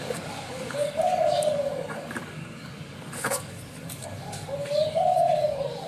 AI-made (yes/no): yes